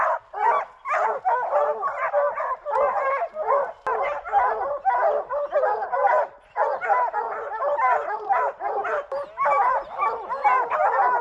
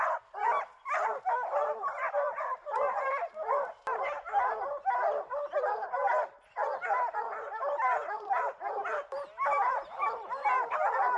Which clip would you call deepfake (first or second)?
second